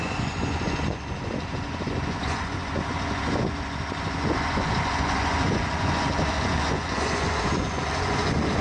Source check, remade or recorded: remade